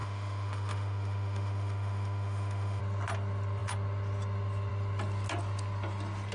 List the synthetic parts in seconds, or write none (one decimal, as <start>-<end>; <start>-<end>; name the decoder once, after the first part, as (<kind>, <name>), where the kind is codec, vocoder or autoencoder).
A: 0.0-2.8 (autoencoder, DAC-VAE)